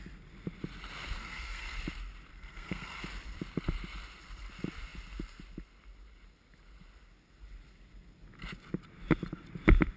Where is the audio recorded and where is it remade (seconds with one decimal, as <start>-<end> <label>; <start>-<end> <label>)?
0.0-1.2 recorded; 1.2-1.8 remade; 1.8-2.3 recorded; 2.3-3.0 remade; 3.0-10.0 recorded